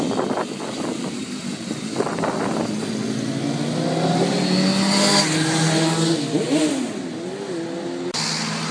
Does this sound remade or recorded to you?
recorded